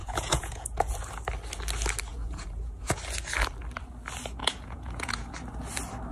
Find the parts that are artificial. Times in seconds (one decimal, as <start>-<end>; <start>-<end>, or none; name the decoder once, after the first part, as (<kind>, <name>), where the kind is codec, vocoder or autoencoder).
0.0-0.9 (vocoder, Vocos); 2.1-3.0; 4.4-5.3

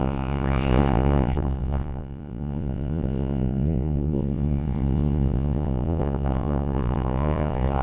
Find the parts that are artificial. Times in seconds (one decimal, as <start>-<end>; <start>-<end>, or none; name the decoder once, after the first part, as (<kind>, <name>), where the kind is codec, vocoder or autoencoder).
0.0-7.8 (vocoder, Vocos)

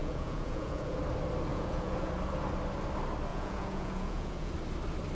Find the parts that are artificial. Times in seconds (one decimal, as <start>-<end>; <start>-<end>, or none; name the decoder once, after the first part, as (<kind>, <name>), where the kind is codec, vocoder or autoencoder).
0.0-1.0 (vocoder, Vocos); 1.5-2.1; 3.3-4.5

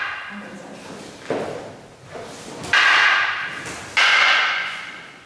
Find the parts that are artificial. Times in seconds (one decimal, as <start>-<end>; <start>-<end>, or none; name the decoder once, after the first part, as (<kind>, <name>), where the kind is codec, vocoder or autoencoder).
4.1-5.3 (vocoder, Vocos)

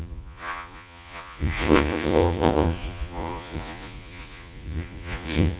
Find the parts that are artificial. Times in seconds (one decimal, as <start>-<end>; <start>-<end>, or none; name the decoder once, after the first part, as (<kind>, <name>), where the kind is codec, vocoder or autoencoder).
0.0-5.6 (vocoder, Vocos)

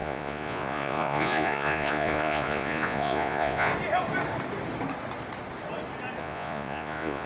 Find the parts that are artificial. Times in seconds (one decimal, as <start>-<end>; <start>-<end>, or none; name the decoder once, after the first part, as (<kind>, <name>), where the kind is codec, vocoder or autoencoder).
0.0-3.7 (vocoder, Vocos); 6.2-7.3